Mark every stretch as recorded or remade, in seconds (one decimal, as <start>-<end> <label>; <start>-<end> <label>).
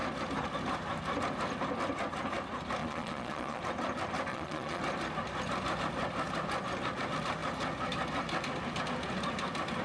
0.0-2.8 recorded; 2.8-3.6 remade; 3.6-4.3 recorded; 4.3-4.8 remade; 4.8-9.8 recorded